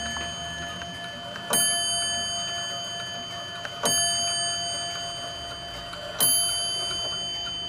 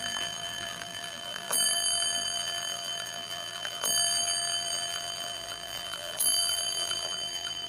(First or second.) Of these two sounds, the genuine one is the first